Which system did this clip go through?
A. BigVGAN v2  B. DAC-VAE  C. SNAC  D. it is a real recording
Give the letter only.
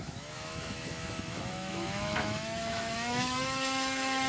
B